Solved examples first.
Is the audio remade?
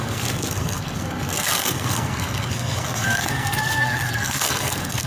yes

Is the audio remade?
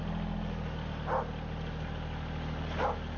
no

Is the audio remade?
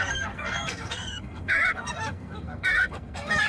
yes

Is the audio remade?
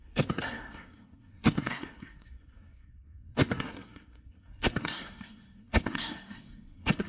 yes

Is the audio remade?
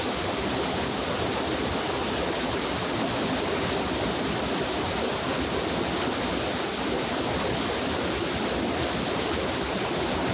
no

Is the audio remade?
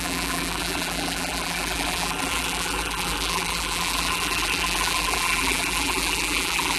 yes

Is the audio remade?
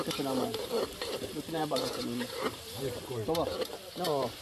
yes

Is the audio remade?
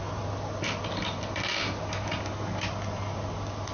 no